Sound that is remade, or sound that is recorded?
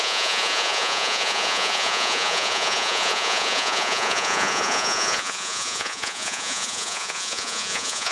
remade